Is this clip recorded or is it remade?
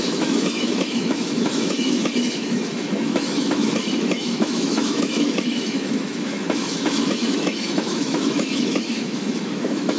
remade